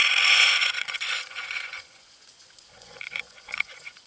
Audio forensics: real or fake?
fake